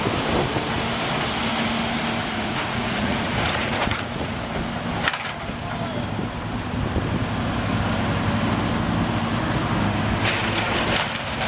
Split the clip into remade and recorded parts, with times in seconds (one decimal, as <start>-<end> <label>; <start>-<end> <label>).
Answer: 0.0-2.2 recorded; 2.2-4.4 remade; 4.4-11.5 recorded